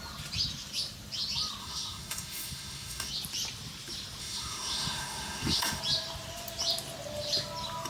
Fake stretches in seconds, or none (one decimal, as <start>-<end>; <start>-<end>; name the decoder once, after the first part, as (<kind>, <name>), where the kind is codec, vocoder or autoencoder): 1.6-3.1 (autoencoder, DAC-VAE); 4.2-5.8